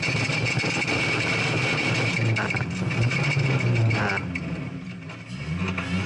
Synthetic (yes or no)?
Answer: no